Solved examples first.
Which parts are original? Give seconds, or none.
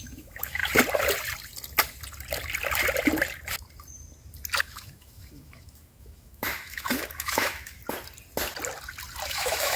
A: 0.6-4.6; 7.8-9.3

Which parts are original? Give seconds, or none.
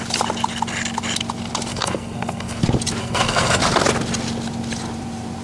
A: 0.0-1.7; 2.6-3.0; 3.6-5.4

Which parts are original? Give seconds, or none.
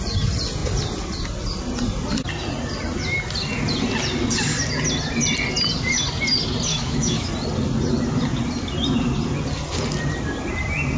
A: 0.0-6.7; 7.3-11.0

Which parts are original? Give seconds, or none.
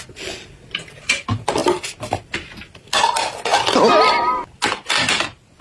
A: 0.0-5.6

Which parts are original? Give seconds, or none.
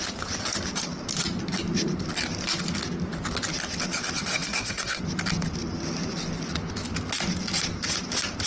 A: 0.0-4.3; 5.0-8.5